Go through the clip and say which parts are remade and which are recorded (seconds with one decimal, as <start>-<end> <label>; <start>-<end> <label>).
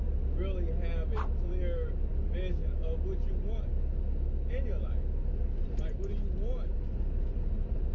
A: 0.0-7.9 recorded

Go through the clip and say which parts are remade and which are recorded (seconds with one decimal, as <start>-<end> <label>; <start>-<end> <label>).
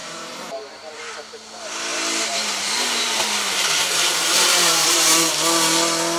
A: 0.0-0.9 remade; 0.9-1.9 recorded; 1.9-5.3 remade; 5.3-6.2 recorded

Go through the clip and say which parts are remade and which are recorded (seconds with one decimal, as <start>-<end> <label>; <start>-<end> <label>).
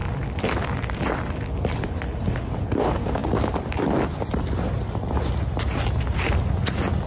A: 0.0-7.1 recorded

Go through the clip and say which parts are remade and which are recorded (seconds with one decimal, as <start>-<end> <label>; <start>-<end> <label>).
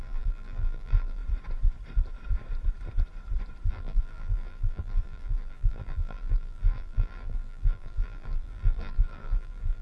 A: 0.0-1.2 remade; 1.2-3.7 recorded; 3.7-9.8 remade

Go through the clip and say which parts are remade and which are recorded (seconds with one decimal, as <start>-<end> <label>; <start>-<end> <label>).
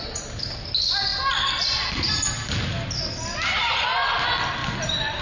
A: 0.0-4.6 recorded; 4.6-5.2 remade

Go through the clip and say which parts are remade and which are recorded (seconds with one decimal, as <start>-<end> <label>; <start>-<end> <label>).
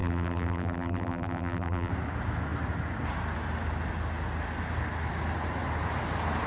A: 0.0-1.9 remade; 1.9-6.5 recorded